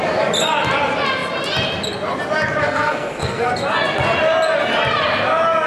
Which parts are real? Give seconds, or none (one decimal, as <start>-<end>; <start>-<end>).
0.0-2.6; 3.5-5.7